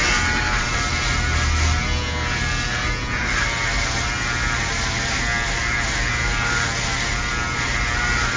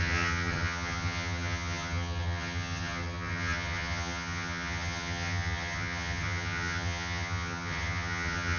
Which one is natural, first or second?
first